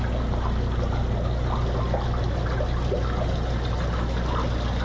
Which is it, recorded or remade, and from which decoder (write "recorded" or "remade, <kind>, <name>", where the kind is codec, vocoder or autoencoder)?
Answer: recorded